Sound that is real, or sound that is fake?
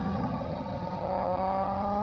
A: fake